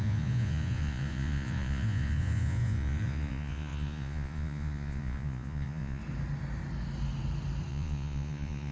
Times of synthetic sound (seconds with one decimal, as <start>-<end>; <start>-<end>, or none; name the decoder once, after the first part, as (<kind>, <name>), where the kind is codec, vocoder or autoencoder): 0.0-6.0 (vocoder, Vocos); 7.7-8.7